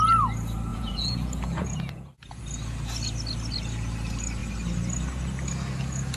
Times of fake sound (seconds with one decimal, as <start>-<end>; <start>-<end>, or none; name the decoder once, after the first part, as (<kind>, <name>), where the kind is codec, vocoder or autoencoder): 0.7-2.4 (vocoder, Vocos)